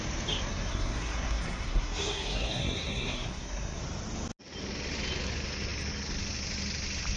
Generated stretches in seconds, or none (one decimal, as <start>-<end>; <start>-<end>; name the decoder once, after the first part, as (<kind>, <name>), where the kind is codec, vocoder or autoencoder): 0.5-3.8 (codec, SNAC)